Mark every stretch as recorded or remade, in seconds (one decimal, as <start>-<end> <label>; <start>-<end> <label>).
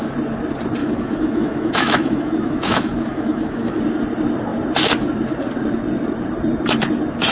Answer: 0.0-0.8 recorded; 0.8-3.8 remade; 3.8-7.3 recorded